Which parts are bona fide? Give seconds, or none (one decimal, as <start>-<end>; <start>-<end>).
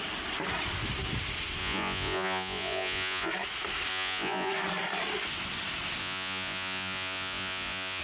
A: 0.0-1.6; 3.3-3.9; 4.5-6.0